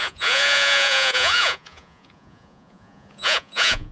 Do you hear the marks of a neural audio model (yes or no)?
yes